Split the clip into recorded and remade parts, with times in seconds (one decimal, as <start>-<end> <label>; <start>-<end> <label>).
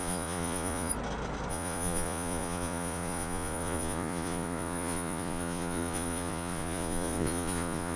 0.0-0.9 remade; 0.9-1.5 recorded; 1.5-8.0 remade